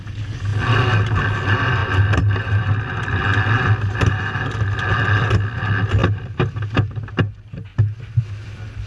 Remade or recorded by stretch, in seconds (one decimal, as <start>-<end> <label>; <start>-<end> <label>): 0.0-6.0 recorded; 6.0-6.9 remade; 6.9-8.9 recorded